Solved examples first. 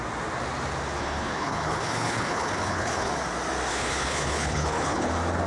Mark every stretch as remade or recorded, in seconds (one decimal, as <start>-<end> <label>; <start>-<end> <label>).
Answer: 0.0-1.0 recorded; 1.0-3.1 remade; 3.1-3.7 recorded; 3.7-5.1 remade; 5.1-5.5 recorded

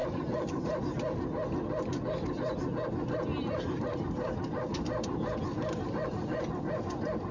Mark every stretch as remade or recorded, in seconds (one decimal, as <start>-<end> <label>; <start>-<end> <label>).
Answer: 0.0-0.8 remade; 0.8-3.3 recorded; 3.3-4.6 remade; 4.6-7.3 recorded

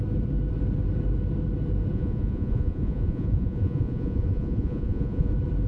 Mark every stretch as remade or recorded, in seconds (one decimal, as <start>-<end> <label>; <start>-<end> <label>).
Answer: 0.0-1.9 recorded; 1.9-5.3 remade; 5.3-5.7 recorded

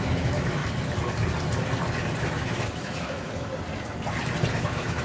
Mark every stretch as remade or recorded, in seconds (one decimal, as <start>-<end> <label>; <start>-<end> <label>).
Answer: 0.0-0.6 remade; 0.6-2.2 recorded; 2.2-3.5 remade; 3.5-4.5 recorded; 4.5-5.0 remade

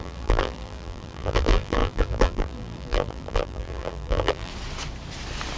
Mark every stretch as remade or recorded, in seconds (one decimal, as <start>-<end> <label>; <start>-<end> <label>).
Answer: 0.0-4.5 remade; 4.5-5.6 recorded